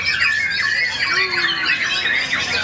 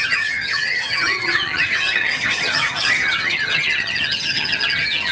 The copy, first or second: second